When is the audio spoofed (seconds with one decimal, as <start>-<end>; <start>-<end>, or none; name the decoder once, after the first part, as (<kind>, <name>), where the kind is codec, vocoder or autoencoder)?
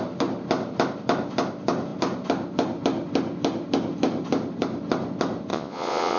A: 5.5-6.2 (vocoder, Vocos)